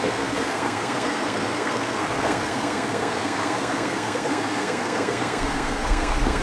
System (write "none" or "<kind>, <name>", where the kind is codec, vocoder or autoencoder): codec, SNAC